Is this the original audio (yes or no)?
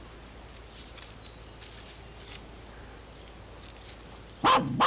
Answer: yes